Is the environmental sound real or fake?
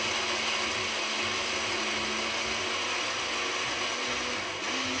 real